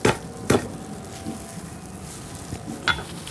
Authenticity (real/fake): real